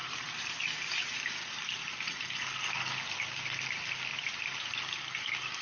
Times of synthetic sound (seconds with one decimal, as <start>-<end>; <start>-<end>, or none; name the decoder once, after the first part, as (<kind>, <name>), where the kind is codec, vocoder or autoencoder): 0.0-2.0 (vocoder, BigVGAN v2); 4.1-4.8